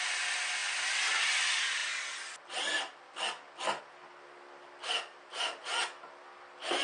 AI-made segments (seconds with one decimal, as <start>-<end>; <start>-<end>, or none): none